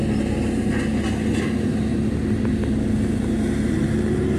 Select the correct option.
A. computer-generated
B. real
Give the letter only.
B